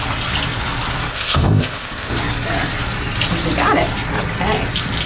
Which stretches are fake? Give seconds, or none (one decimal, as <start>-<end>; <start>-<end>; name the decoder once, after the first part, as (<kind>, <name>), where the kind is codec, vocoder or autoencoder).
1.1-2.1 (codec, ZipCodec)